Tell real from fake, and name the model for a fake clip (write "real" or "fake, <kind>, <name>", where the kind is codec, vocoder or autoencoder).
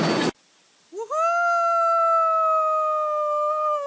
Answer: real